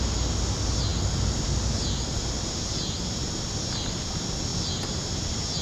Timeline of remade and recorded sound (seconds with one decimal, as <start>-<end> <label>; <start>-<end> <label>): 0.0-5.6 recorded